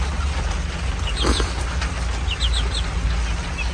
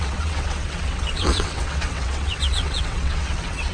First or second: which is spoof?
second